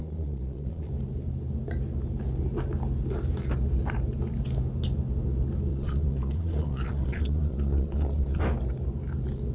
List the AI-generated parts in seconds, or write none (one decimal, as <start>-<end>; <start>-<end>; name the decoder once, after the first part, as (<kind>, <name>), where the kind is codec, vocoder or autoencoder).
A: 0.0-0.9 (vocoder, Vocos); 5.7-8.4